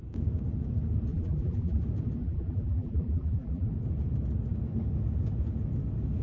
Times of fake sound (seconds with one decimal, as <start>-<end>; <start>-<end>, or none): 1.1-1.8; 2.2-3.7